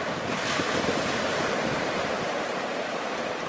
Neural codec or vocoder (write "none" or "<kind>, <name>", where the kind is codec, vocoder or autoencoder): vocoder, BigVGAN v2